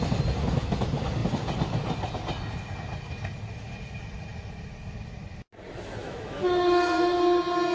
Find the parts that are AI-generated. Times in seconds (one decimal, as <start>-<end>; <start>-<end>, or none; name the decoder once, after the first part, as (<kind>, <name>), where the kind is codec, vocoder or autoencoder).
6.0-7.2 (autoencoder, DAC-VAE)